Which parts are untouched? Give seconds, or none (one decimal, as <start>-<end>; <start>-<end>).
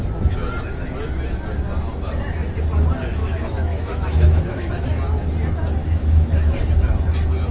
0.0-3.2; 4.7-5.8; 6.5-7.5